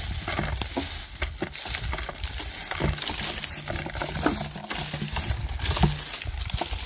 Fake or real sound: real